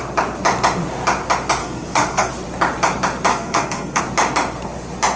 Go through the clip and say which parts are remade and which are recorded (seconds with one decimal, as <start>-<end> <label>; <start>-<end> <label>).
0.0-1.6 recorded; 1.6-2.3 remade; 2.3-3.3 recorded; 3.3-4.0 remade; 4.0-5.2 recorded